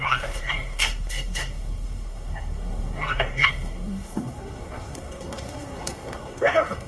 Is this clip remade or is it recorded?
remade